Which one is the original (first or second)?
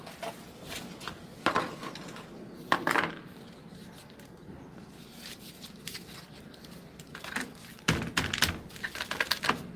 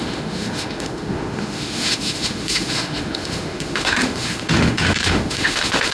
first